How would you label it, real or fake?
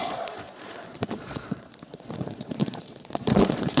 fake